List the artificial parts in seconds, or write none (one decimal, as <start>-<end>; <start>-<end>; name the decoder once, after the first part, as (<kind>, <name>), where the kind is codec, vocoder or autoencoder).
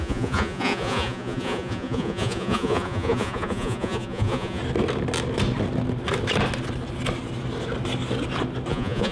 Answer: 0.0-4.6 (vocoder, Vocos); 8.7-9.1